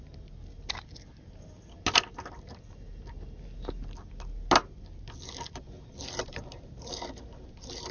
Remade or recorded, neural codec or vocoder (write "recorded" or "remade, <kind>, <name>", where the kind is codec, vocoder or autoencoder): recorded